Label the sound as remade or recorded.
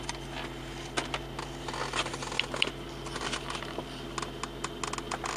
recorded